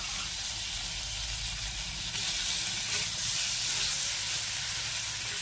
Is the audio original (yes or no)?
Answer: yes